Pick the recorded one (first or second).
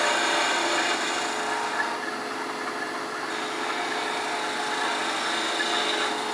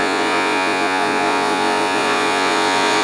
first